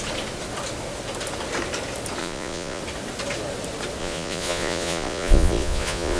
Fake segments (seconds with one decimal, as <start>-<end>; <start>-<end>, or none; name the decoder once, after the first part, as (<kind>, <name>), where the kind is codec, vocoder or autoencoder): 2.2-2.8 (vocoder, Vocos); 4.0-6.2